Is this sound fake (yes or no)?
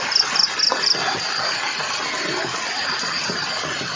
no